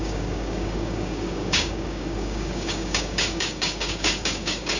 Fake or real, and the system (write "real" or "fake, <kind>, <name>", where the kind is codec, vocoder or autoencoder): fake, codec, DAC